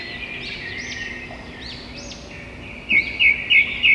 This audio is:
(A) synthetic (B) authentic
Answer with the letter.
B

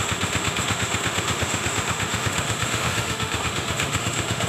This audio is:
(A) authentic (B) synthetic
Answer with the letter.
B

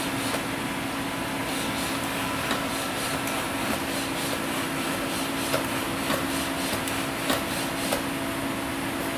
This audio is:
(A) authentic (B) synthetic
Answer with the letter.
A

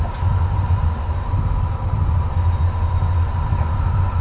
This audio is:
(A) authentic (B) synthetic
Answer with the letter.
A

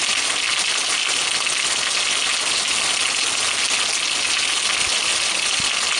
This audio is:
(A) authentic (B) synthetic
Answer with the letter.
A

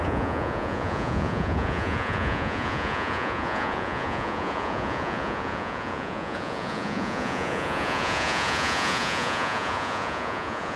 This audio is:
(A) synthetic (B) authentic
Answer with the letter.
A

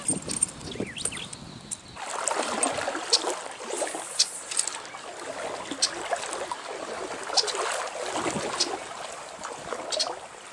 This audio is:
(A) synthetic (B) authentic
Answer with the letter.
B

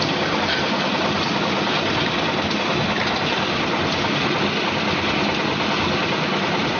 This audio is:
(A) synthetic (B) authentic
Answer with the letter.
B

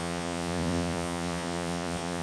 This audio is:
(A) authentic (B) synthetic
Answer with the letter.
B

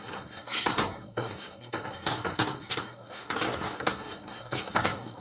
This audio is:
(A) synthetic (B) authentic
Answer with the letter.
A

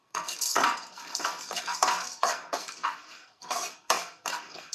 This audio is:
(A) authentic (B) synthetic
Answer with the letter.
B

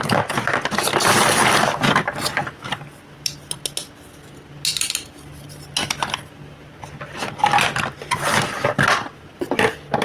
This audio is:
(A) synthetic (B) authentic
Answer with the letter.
B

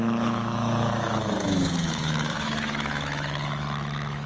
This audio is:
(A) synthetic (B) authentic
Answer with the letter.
A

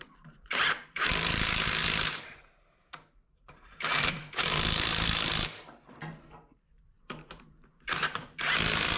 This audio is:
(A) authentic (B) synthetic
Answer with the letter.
B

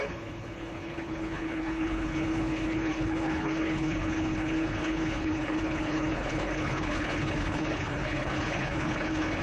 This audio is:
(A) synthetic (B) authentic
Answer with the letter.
A